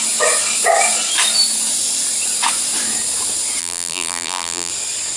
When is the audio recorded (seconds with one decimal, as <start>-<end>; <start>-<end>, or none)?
0.0-3.6; 4.7-5.2